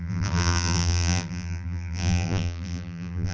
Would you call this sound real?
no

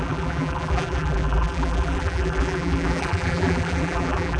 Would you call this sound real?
no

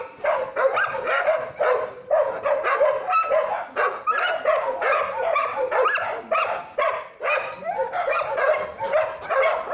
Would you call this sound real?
yes